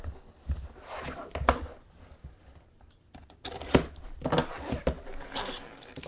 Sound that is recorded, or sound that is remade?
recorded